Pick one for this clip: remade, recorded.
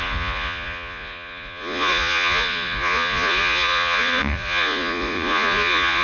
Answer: remade